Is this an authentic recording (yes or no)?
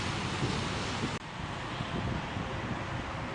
yes